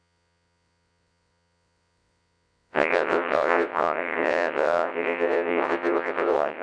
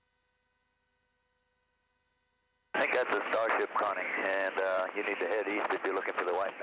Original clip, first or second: second